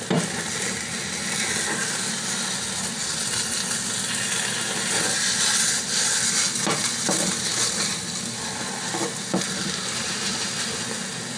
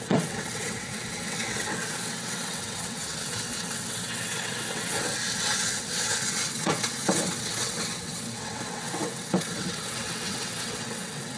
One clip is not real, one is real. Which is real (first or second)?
first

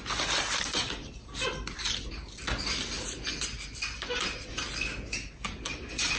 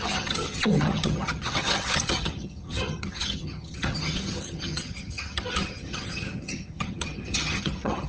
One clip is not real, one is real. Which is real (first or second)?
first